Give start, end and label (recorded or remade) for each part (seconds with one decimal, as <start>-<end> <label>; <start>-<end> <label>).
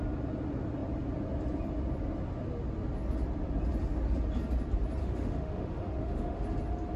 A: 0.0-5.0 recorded; 5.0-6.4 remade; 6.4-7.0 recorded